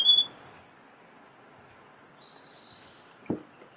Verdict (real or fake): real